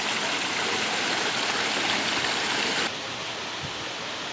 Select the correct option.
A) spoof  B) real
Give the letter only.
B